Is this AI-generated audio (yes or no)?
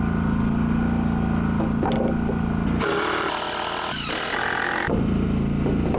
no